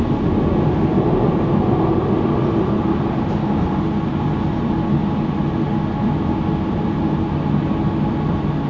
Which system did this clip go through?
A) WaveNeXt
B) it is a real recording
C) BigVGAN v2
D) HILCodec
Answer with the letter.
B